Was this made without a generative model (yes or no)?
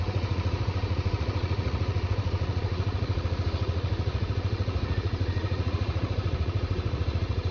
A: no